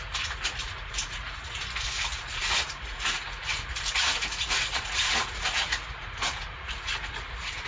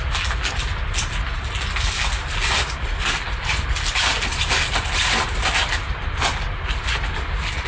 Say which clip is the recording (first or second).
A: second